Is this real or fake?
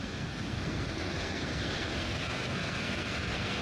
fake